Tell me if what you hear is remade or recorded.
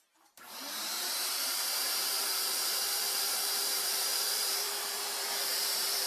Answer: remade